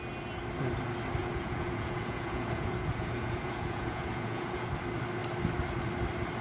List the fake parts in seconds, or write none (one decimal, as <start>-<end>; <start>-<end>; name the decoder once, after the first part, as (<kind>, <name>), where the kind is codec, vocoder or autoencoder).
1.2-4.7 (vocoder, Vocos)